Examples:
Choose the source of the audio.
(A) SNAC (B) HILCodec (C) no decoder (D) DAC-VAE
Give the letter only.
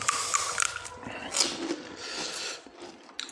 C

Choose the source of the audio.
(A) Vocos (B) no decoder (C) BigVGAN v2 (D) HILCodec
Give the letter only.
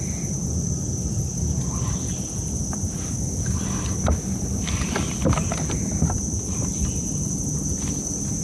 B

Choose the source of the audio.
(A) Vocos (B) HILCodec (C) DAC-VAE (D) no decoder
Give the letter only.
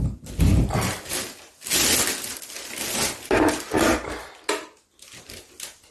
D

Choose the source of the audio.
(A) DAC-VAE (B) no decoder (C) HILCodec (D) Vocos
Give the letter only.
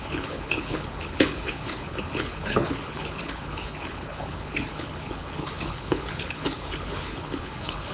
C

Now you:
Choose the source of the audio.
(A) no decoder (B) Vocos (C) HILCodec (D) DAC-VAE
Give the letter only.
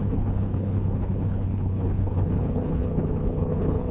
C